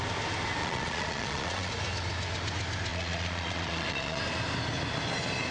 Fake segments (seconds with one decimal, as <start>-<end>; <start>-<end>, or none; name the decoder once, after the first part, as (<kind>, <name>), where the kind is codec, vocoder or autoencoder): 0.6-1.7 (vocoder, Vocos); 2.9-4.2